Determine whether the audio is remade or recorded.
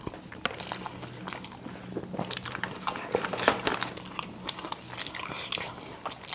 recorded